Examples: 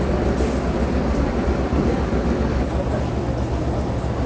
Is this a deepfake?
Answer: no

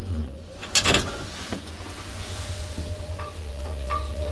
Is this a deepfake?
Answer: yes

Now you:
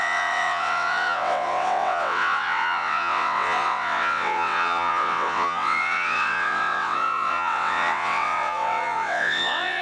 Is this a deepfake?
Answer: yes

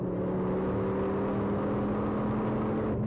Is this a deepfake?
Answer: no